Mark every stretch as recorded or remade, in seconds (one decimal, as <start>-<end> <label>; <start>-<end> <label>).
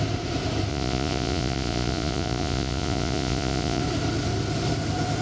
0.0-0.7 recorded; 0.7-3.8 remade; 3.8-5.2 recorded